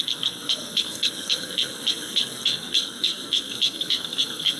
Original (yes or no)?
no